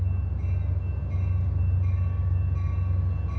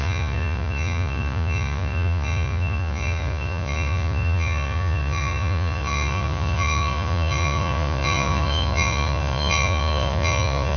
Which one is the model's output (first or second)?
second